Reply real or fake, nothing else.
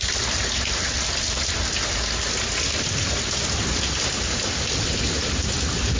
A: real